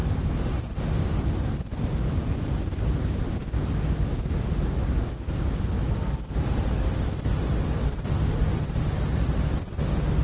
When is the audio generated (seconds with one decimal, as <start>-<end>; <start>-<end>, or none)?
none